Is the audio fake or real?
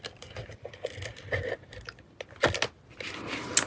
real